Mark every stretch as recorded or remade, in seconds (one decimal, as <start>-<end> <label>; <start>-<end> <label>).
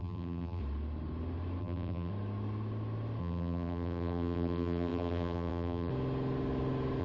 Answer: 0.0-0.6 remade; 0.6-1.6 recorded; 1.6-2.1 remade; 2.1-3.2 recorded; 3.2-5.9 remade; 5.9-7.0 recorded